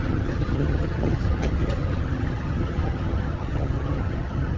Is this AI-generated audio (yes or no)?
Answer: yes